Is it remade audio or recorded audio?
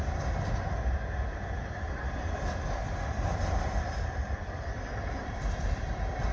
recorded